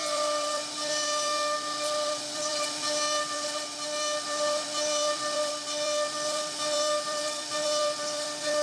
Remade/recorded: remade